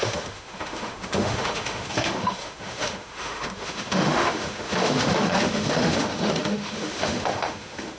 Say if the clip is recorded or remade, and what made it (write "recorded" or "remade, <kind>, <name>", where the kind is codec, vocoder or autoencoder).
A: remade, autoencoder, DAC-VAE